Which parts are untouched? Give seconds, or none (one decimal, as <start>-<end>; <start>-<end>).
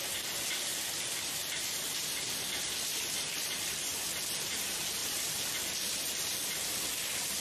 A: 3.9-4.4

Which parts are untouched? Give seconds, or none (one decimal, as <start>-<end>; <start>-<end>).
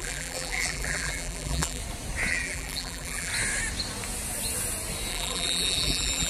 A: 1.8-2.3; 3.3-5.1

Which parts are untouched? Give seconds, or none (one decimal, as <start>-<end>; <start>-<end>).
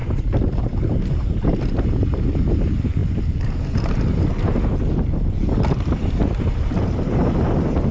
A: 1.4-7.9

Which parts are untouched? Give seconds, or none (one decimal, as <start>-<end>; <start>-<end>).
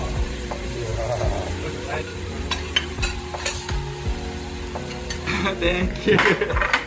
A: 3.1-6.9